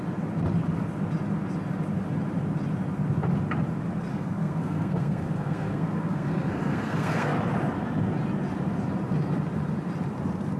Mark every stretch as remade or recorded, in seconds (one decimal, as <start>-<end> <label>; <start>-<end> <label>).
0.0-4.1 recorded; 4.1-7.4 remade; 7.4-10.6 recorded